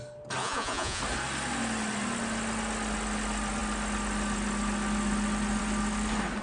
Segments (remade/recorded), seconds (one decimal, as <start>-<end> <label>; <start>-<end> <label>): 0.0-0.4 recorded; 0.4-1.0 remade; 1.0-6.4 recorded